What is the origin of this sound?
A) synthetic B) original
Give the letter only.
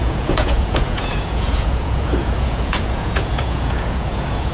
A